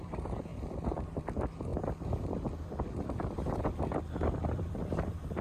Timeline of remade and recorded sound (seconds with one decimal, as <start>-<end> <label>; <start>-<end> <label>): 0.0-5.4 remade